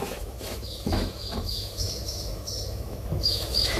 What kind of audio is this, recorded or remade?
remade